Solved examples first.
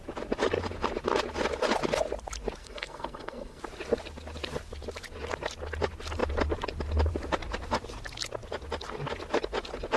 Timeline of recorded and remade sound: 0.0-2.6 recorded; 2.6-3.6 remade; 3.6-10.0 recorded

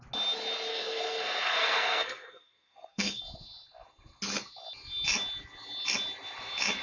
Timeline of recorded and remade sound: 0.0-0.7 recorded; 0.7-3.2 remade; 3.2-6.8 recorded

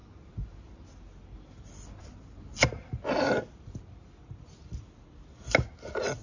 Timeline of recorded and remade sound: 0.0-6.2 recorded

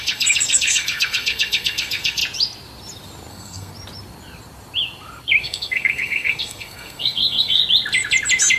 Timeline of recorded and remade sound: 0.0-2.2 remade; 2.2-3.3 recorded; 3.3-3.7 remade; 3.7-5.4 recorded; 5.4-7.6 remade; 7.6-8.6 recorded